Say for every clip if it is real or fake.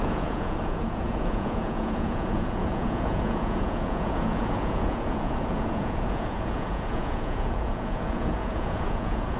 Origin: fake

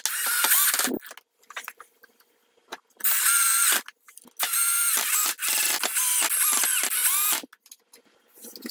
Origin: real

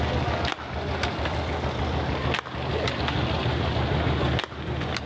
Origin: real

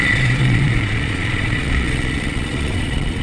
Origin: fake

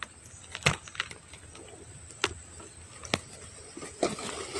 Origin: real